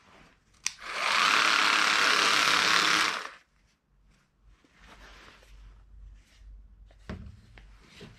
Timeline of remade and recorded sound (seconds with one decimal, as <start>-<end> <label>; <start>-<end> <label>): 0.0-2.1 recorded; 2.1-3.0 remade; 3.0-8.2 recorded